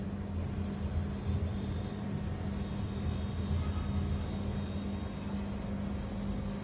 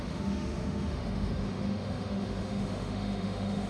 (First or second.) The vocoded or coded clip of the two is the second